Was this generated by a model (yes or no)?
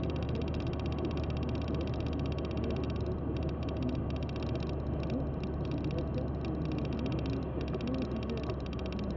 no